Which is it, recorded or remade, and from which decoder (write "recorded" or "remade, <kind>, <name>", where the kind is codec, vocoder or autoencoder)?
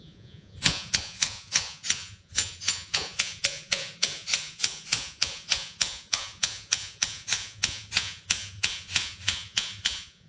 remade, vocoder, Vocos